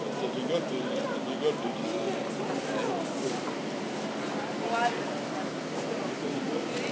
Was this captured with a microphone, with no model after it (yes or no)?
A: yes